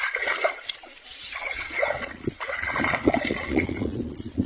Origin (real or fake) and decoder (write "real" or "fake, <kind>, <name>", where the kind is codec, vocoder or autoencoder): fake, vocoder, Vocos